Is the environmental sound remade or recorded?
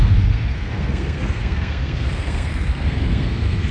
remade